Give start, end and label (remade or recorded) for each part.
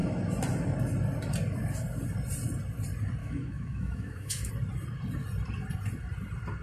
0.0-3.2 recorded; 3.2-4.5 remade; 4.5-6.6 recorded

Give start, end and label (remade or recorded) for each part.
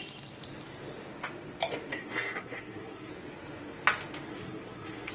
0.0-1.9 recorded; 1.9-3.1 remade; 3.1-4.3 recorded; 4.3-5.1 remade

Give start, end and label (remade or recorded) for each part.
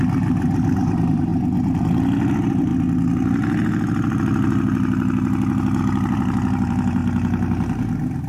0.0-1.3 remade; 1.3-2.3 recorded; 2.3-2.7 remade; 2.7-5.8 recorded; 5.8-7.0 remade; 7.0-8.3 recorded